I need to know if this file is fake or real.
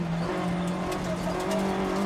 real